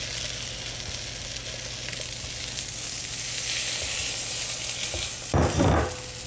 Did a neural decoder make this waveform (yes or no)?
no